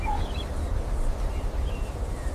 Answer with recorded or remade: recorded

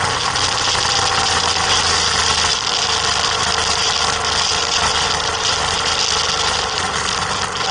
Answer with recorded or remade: recorded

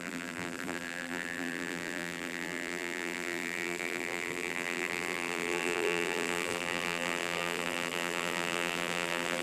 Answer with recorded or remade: remade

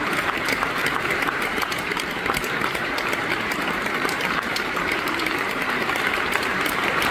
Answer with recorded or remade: remade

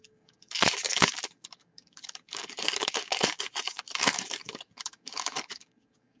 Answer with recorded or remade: remade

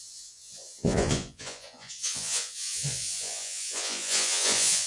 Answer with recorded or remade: remade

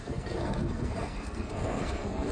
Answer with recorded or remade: remade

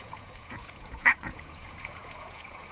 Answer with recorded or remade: remade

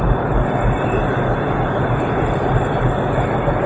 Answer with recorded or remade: remade